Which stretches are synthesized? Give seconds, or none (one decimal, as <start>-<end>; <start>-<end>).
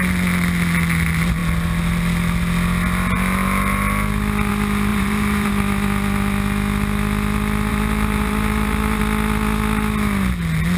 4.9-5.5; 7.7-9.0